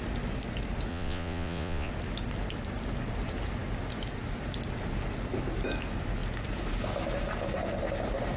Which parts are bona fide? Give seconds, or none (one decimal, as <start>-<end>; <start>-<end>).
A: 0.0-0.9; 1.9-8.4